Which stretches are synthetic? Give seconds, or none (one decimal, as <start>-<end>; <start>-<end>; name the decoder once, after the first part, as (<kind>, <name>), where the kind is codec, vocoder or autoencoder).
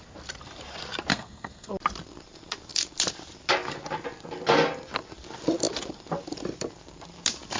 1.1-1.7 (codec, SNAC)